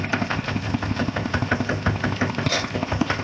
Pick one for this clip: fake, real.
fake